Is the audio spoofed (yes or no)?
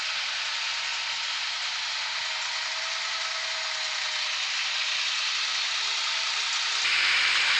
no